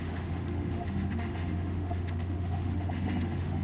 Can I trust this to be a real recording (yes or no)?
no